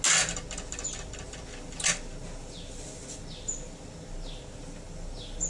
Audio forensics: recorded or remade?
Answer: recorded